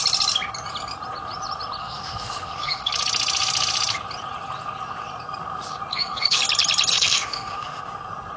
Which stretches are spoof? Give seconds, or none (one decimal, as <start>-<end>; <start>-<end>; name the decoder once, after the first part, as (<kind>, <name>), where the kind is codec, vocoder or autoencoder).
1.8-2.9 (autoencoder, DAC-VAE); 5.9-6.4; 6.9-7.8